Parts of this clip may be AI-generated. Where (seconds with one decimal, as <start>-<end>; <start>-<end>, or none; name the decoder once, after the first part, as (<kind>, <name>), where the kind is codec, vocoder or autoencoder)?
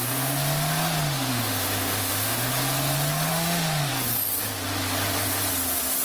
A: 1.3-2.5 (autoencoder, DAC-VAE); 3.3-3.9